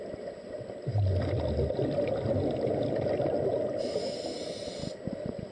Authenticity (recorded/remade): recorded